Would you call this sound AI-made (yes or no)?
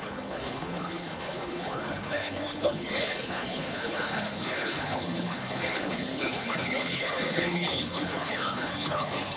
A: yes